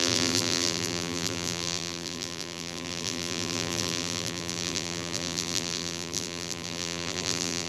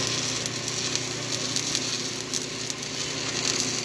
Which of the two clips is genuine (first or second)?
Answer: second